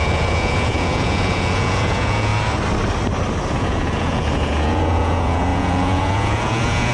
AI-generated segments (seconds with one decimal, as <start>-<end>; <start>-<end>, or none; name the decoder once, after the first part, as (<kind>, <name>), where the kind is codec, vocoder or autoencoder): 0.0-2.3 (vocoder, Vocos); 3.5-6.9